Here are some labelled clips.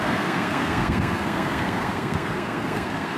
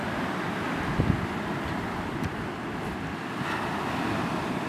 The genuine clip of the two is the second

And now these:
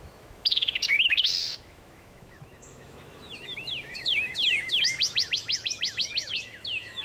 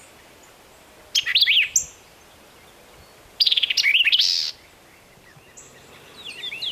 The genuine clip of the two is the second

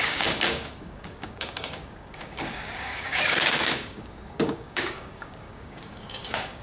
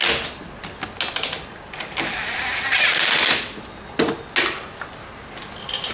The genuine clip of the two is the second